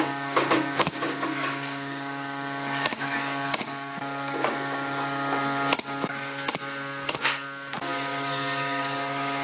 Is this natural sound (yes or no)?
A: no